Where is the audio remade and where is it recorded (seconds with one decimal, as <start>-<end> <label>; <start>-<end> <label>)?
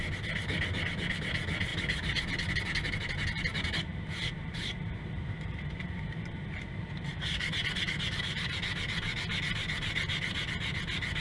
0.0-3.5 recorded; 3.5-7.4 remade; 7.4-11.2 recorded